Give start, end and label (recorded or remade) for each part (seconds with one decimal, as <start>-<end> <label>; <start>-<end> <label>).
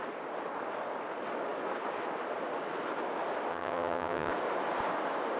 0.0-3.5 recorded; 3.5-4.3 remade; 4.3-5.4 recorded